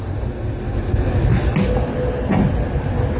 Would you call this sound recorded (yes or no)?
yes